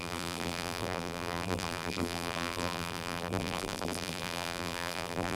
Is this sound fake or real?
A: fake